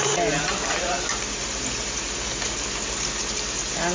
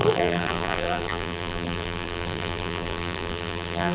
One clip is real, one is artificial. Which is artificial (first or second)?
second